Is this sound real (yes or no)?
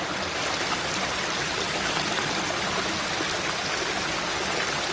yes